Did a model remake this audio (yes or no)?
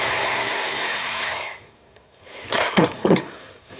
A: yes